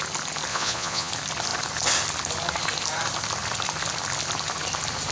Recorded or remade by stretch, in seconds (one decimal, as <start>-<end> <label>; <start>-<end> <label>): 0.0-0.5 recorded; 0.5-1.1 remade; 1.1-5.1 recorded